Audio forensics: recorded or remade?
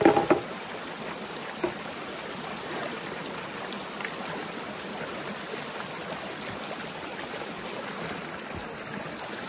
recorded